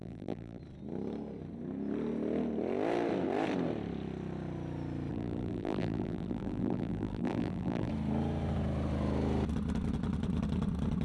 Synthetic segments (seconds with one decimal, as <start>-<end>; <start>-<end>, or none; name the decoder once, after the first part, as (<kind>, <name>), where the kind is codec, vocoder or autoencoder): 0.0-0.6 (vocoder, BigVGAN v2); 5.1-7.9